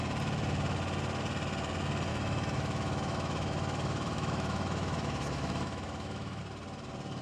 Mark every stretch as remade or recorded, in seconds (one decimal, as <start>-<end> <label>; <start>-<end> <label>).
0.0-2.1 recorded; 2.1-6.4 remade; 6.4-7.2 recorded